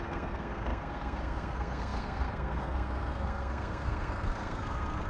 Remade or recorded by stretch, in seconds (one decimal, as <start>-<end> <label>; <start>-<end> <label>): 0.0-5.1 remade

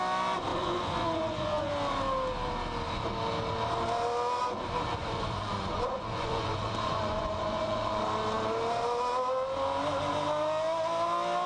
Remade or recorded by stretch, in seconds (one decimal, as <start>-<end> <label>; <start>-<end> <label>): 0.0-0.5 recorded; 0.5-1.7 remade; 1.7-5.0 recorded; 5.0-8.0 remade; 8.0-11.5 recorded

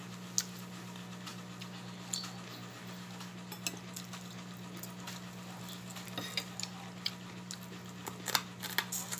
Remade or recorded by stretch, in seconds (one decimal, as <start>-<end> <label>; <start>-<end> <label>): 0.0-9.2 recorded

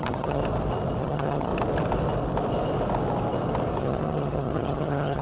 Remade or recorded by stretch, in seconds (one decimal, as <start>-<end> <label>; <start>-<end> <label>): 0.0-0.4 remade; 0.4-1.0 recorded; 1.0-1.5 remade; 1.5-3.8 recorded; 3.8-5.2 remade

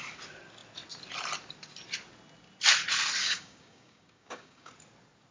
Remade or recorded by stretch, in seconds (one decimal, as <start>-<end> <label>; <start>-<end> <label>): 0.0-3.2 recorded; 3.2-4.7 remade; 4.7-5.3 recorded

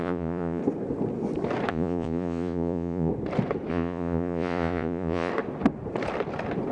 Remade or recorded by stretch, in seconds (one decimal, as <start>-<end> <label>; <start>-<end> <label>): 0.0-0.6 remade; 0.6-1.7 recorded; 1.7-3.1 remade; 3.1-3.7 recorded; 3.7-5.3 remade; 5.3-6.7 recorded

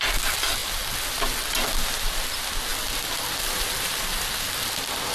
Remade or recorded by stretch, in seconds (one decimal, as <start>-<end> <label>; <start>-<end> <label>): 0.0-2.7 recorded; 2.7-4.4 remade; 4.4-5.1 recorded